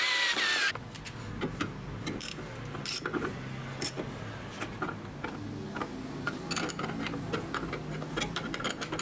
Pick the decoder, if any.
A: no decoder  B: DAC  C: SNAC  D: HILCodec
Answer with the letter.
A